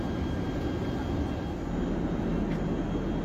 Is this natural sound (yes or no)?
yes